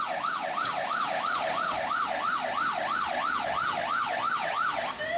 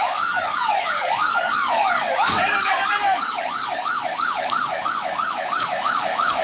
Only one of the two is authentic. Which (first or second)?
first